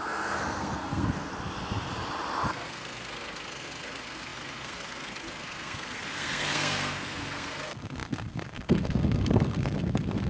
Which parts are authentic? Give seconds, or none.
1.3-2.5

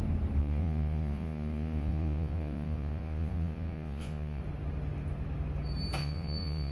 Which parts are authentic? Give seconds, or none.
0.0-0.4; 4.4-6.0

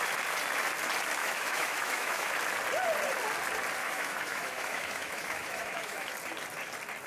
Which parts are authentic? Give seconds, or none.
0.0-1.2; 2.3-3.8; 6.1-7.1

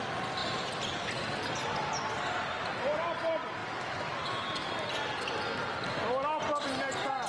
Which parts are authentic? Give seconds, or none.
0.0-3.6; 4.7-7.3

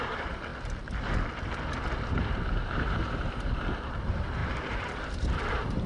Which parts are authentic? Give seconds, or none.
0.5-2.1

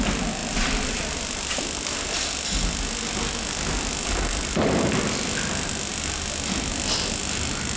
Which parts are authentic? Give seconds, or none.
0.0-7.8